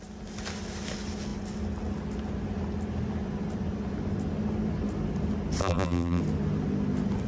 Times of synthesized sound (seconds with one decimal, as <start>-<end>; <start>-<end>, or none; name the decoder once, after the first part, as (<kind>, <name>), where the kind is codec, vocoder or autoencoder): 5.6-6.2 (vocoder, BigVGAN v2)